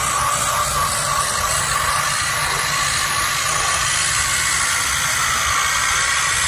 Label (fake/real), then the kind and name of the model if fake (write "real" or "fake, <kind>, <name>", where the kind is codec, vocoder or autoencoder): real